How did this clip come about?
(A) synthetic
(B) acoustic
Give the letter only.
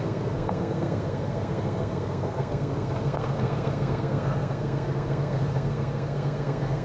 A